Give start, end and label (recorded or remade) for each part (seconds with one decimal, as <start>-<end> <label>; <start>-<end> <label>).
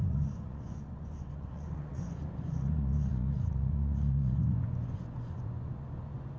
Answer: 0.0-6.4 remade